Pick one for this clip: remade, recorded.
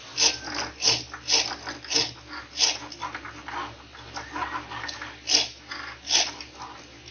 recorded